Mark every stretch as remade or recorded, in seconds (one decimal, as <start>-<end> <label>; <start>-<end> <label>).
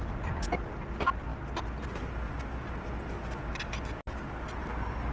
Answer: 0.0-5.1 recorded